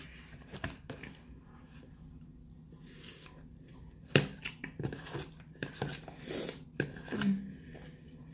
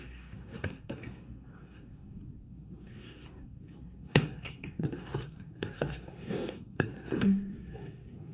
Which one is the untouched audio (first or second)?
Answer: first